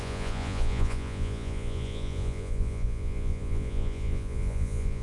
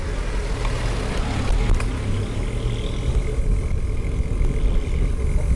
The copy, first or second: first